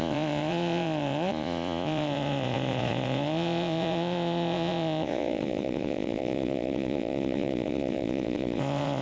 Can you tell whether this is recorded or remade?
remade